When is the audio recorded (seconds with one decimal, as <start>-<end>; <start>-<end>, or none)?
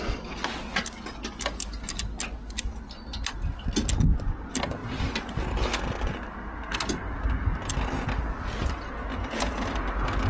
0.0-10.3